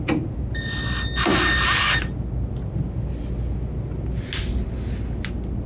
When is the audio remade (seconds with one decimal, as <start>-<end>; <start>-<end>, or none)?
none